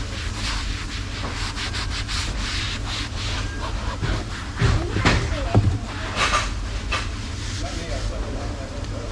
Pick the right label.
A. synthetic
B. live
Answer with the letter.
B